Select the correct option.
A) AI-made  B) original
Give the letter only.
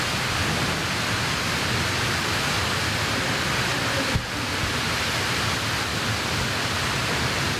B